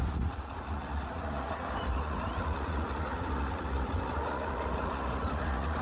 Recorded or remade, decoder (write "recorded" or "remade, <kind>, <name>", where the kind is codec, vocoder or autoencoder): remade, vocoder, Vocos